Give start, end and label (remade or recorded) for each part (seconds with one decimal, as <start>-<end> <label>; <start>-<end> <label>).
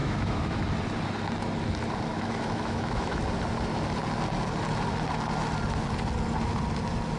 0.0-0.6 remade; 0.6-2.1 recorded; 2.1-3.2 remade; 3.2-7.2 recorded